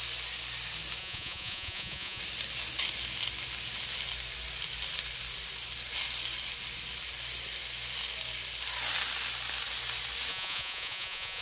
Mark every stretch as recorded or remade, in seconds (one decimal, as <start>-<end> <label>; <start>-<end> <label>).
0.0-1.0 recorded; 1.0-2.2 remade; 2.2-10.3 recorded; 10.3-11.4 remade